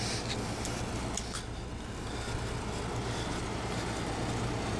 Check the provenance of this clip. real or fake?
real